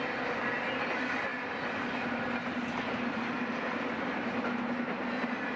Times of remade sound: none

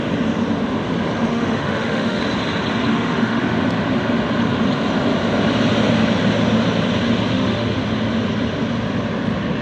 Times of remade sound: 1.3-2.2 (autoencoder, DAC-VAE); 2.9-3.4; 7.3-7.8

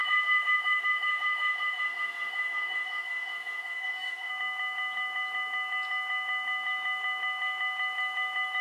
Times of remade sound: 0.0-4.3 (autoencoder, DAC-VAE)

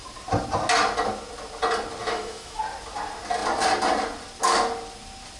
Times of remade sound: 2.0-2.6 (autoencoder, DAC-VAE)

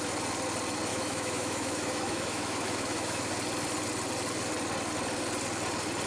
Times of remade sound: 0.9-3.3 (autoencoder, DAC-VAE)

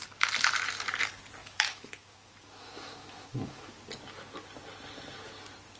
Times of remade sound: 1.4-3.8 (autoencoder, DAC-VAE)

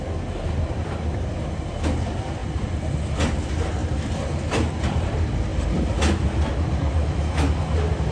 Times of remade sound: 7.0-7.5 (autoencoder, DAC-VAE)

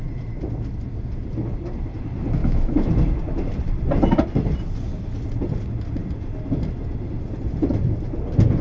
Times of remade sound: 2.4-2.9 (autoencoder, DAC-VAE)